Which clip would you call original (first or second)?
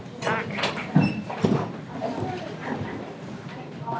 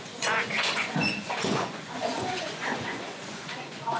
first